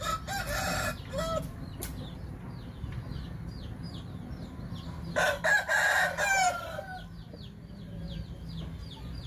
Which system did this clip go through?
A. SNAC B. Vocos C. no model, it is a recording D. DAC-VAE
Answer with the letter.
C